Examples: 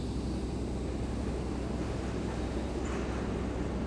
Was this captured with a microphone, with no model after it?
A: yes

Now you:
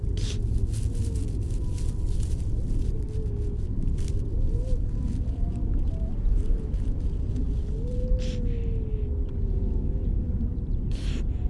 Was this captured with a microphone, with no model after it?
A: yes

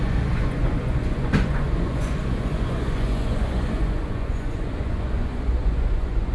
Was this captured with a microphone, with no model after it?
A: no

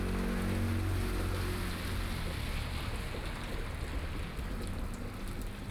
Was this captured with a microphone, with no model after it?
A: yes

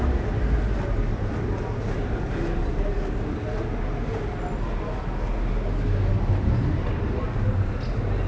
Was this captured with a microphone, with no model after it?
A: yes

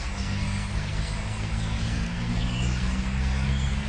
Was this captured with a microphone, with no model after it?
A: no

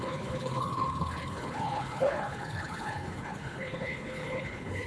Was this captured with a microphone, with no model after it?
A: no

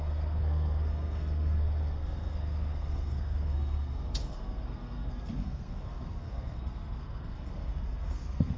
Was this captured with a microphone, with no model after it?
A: no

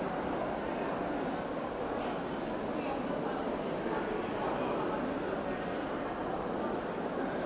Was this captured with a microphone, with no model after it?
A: yes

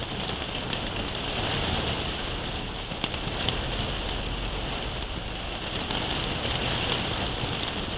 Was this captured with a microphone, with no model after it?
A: yes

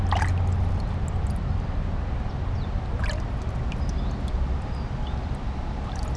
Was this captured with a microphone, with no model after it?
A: yes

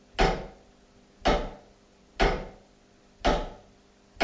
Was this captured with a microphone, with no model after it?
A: yes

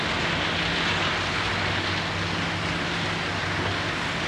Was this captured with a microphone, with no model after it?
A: yes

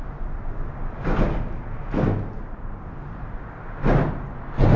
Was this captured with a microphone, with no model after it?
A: yes